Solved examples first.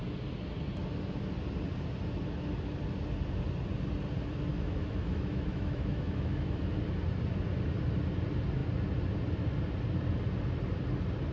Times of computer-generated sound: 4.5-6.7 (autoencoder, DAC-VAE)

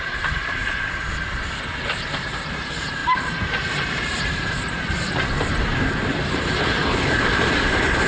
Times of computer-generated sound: 0.0-0.6 (vocoder, BigVGAN v2); 1.6-8.1

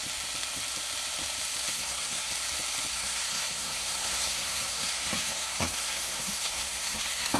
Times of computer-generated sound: 1.7-2.3 (codec, SNAC); 2.9-7.4